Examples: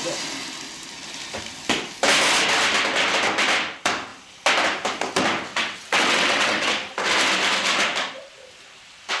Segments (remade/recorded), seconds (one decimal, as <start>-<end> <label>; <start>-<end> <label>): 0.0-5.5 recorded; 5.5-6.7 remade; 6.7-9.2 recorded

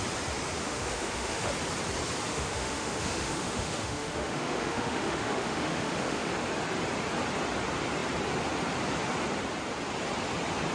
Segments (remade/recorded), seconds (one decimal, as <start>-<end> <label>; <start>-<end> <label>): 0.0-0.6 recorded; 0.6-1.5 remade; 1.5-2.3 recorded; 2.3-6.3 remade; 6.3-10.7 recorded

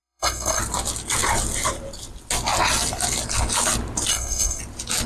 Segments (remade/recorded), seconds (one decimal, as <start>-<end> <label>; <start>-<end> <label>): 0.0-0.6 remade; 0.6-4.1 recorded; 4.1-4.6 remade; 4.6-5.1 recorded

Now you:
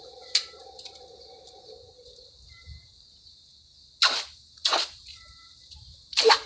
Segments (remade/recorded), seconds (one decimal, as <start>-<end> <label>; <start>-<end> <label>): 0.0-3.5 remade; 3.5-4.9 recorded; 4.9-6.5 remade

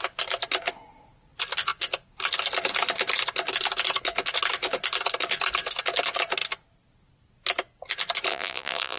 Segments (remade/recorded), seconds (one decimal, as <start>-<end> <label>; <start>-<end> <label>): 0.0-8.3 recorded; 8.3-9.0 remade

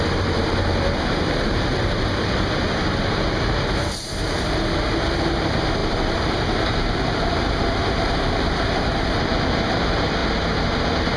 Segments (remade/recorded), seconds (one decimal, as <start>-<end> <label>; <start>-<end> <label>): 0.0-10.2 remade; 10.2-11.2 recorded

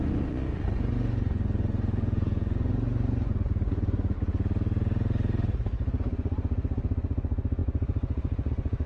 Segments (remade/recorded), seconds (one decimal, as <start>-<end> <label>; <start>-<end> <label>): 0.0-4.3 remade; 4.3-6.0 recorded; 6.0-8.9 remade